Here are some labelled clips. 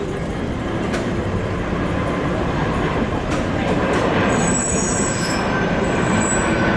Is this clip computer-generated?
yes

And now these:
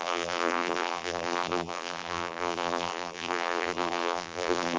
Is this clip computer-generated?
yes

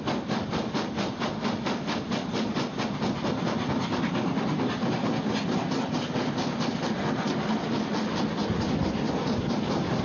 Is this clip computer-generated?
no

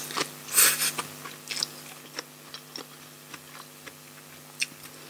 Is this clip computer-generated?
no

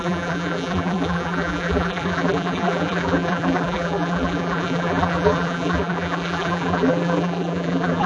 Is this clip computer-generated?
yes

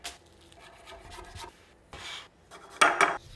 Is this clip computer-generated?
no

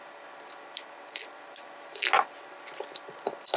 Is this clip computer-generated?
no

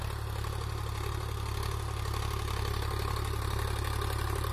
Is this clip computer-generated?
no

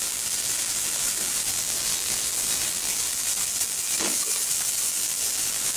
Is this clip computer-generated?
yes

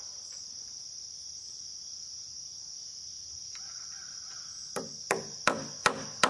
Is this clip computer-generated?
no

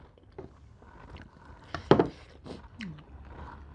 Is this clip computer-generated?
no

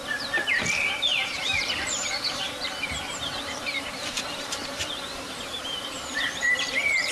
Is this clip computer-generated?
yes